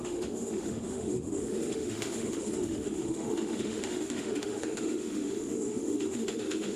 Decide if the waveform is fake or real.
fake